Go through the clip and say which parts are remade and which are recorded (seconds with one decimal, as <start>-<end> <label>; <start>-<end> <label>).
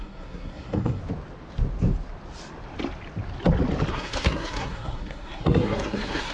0.0-1.0 remade; 1.0-3.9 recorded; 3.9-6.3 remade